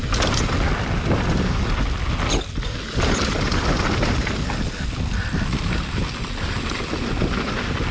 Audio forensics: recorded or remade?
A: recorded